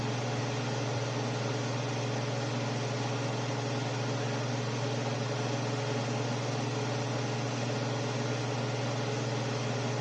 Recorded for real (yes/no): yes